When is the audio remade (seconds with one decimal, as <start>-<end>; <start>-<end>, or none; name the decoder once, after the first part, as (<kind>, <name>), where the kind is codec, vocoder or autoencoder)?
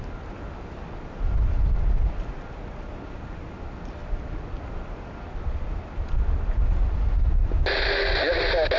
none